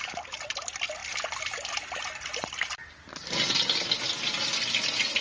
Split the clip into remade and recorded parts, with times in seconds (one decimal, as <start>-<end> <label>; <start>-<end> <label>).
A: 0.0-5.2 recorded